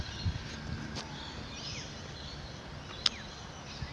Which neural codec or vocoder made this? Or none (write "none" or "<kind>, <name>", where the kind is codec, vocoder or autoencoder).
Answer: none